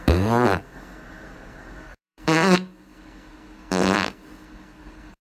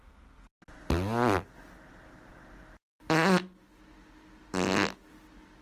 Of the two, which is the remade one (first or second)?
first